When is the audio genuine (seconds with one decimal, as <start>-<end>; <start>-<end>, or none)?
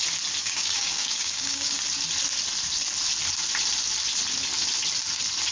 0.0-0.4; 1.8-5.5